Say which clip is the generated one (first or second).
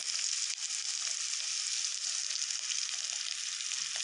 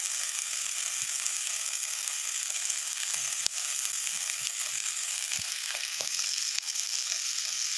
second